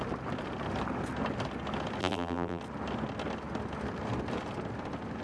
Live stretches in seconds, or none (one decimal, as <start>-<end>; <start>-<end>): 0.0-2.0; 2.6-5.2